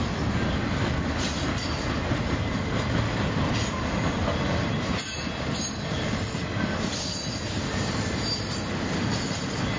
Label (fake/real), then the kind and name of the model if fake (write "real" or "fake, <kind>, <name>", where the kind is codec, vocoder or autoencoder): real